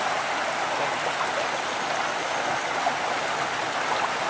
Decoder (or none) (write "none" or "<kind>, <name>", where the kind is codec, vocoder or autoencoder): none